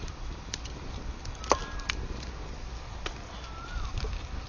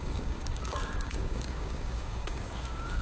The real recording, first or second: first